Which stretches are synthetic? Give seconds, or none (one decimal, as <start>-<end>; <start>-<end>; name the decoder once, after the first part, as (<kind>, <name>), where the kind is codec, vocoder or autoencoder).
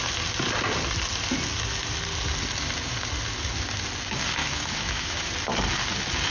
4.4-5.3 (autoencoder, DAC-VAE)